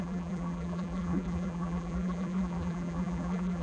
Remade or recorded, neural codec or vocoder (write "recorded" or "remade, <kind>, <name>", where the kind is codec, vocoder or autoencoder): remade, vocoder, BigVGAN v2